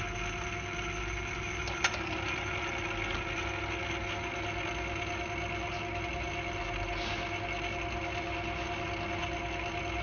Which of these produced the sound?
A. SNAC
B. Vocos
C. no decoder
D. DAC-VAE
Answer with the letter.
C